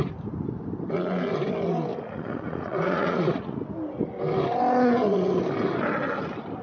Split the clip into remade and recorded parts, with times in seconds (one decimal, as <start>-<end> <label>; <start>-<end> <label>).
0.0-1.9 recorded; 1.9-3.6 remade; 3.6-6.6 recorded